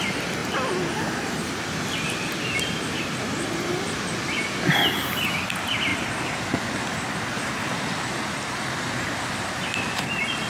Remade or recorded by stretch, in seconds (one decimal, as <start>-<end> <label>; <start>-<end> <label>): 0.0-10.5 recorded